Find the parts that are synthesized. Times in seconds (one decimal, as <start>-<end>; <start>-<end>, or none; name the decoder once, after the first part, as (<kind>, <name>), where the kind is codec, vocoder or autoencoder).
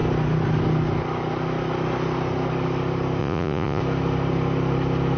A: 3.2-3.8 (vocoder, Vocos)